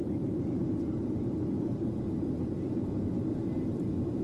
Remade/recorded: remade